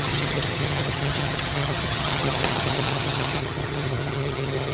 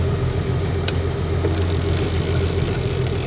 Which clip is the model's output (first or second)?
first